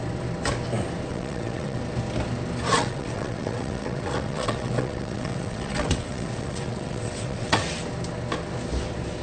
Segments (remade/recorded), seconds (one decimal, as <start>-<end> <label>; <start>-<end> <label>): 0.0-1.1 recorded; 1.1-1.8 remade; 1.8-2.7 recorded; 2.7-7.8 remade; 7.8-9.2 recorded